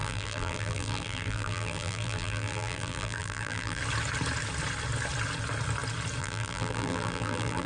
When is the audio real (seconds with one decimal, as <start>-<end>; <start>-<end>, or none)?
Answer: 3.8-6.2